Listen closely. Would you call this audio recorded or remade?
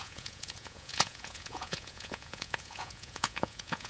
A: remade